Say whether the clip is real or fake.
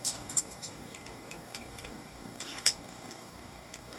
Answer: fake